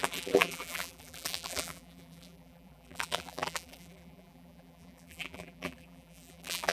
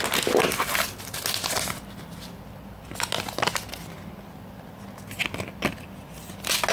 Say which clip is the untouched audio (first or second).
second